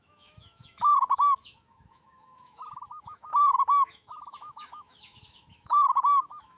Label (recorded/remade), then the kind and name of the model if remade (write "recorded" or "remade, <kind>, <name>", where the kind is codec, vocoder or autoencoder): remade, autoencoder, DAC-VAE